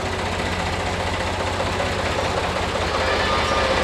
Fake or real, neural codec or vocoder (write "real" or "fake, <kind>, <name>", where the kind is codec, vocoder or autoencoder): real